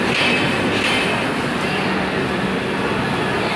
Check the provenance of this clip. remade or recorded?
recorded